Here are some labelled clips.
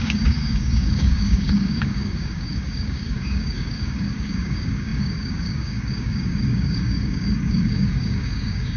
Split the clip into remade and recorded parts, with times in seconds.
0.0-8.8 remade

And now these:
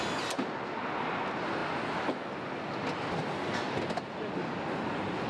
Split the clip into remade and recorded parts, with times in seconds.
0.0-5.3 recorded

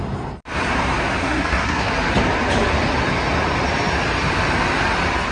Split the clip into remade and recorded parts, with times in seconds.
0.0-1.2 recorded; 1.2-1.9 remade; 1.9-5.3 recorded

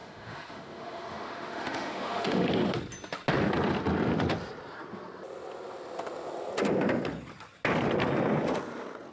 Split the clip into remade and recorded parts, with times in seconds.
0.0-2.5 remade; 2.5-9.1 recorded

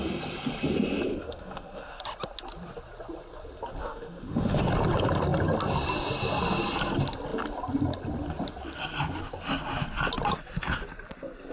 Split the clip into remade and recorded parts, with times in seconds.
0.0-1.1 recorded; 1.1-2.0 remade; 2.0-3.8 recorded; 3.8-4.6 remade; 4.6-11.5 recorded